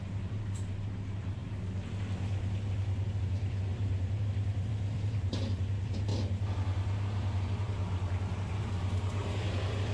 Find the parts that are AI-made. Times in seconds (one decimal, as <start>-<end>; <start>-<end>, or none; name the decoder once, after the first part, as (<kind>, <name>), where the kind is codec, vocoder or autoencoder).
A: 0.0-1.4 (vocoder, BigVGAN v2); 3.2-6.1; 7.4-9.9